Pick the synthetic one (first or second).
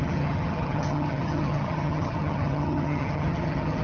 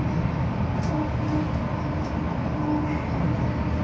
first